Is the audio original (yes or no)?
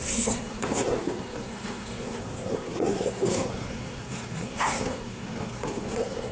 no